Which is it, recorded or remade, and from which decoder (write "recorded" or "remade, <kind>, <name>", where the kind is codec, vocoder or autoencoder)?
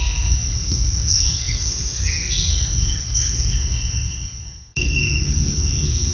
remade, codec, SNAC